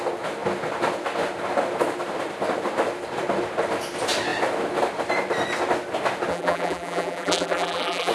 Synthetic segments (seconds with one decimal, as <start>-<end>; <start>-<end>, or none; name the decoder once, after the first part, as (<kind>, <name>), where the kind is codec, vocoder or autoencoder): 6.3-8.1 (vocoder, BigVGAN v2)